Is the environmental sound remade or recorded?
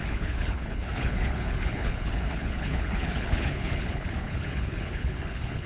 remade